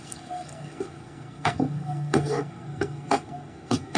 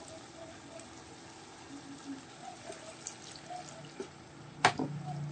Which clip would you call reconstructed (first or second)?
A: first